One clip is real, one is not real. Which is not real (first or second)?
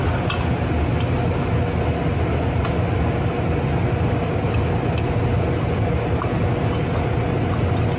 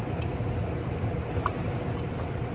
second